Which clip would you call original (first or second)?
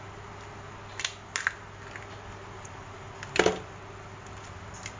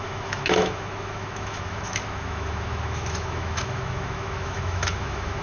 first